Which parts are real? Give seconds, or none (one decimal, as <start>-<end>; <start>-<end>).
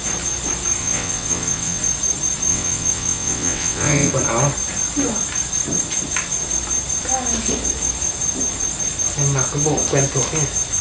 0.0-0.8; 1.8-2.5; 4.1-10.8